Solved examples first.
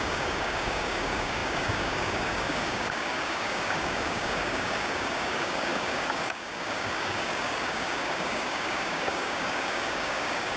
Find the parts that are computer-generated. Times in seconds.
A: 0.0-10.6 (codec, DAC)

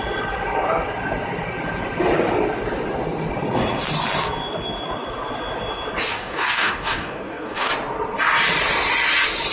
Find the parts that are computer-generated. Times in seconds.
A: 6.1-7.7 (codec, DAC)

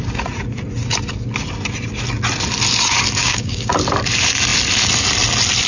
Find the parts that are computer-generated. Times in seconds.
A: 3.2-3.7 (codec, DAC)

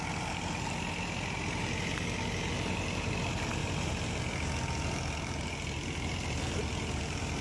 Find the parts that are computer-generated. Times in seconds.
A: none

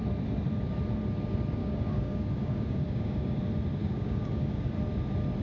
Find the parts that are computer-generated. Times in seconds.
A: 1.6-3.4 (codec, DAC); 3.8-4.7

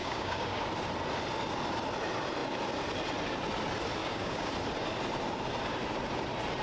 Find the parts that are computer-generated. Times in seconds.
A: 0.0-0.6 (codec, DAC); 4.0-4.5

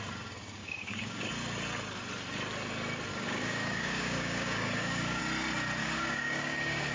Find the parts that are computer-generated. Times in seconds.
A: 0.6-1.3 (codec, DAC); 3.1-5.2; 5.8-6.9

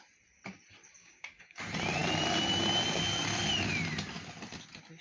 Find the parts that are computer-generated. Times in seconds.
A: 1.0-1.6 (codec, DAC)